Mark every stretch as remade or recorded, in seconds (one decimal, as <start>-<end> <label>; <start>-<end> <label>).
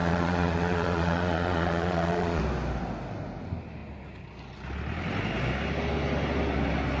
0.0-2.4 remade; 2.4-7.0 recorded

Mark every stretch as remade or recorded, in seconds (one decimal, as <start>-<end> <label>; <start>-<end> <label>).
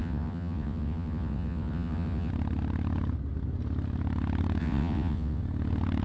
0.0-2.3 remade; 2.3-4.6 recorded; 4.6-5.4 remade; 5.4-6.0 recorded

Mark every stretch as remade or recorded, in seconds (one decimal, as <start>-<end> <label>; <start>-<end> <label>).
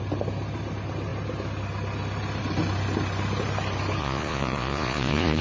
0.0-4.0 recorded; 4.0-5.4 remade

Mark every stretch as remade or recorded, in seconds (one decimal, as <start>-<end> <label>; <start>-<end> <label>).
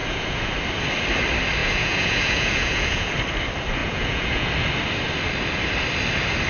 0.0-0.5 remade; 0.5-1.6 recorded; 1.6-3.1 remade; 3.1-3.8 recorded; 3.8-4.5 remade; 4.5-6.5 recorded